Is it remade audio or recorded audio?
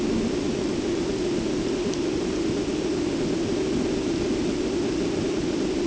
recorded